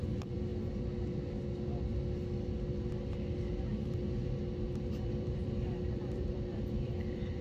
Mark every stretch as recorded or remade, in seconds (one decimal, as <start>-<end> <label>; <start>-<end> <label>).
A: 0.0-0.5 remade; 0.5-4.9 recorded; 4.9-7.4 remade